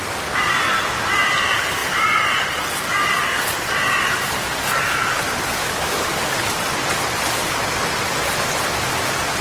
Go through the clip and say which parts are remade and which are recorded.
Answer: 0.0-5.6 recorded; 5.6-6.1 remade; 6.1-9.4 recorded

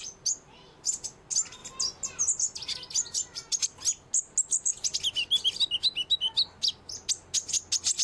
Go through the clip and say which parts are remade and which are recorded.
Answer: 0.0-8.0 recorded

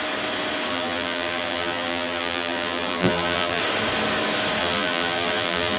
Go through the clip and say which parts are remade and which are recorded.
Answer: 0.0-0.7 recorded; 0.7-3.6 remade; 3.6-4.6 recorded; 4.6-5.8 remade

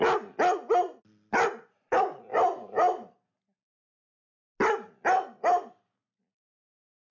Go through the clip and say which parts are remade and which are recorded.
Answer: 0.0-7.1 recorded

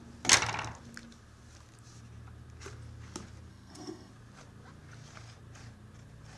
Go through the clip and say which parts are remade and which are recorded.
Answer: 0.0-3.5 recorded; 3.5-4.1 remade; 4.1-6.4 recorded